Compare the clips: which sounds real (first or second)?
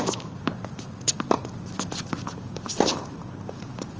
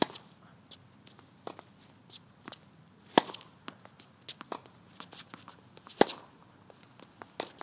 second